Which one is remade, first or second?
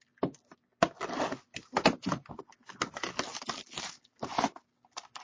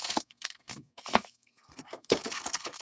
second